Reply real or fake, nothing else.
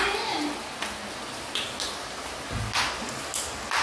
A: real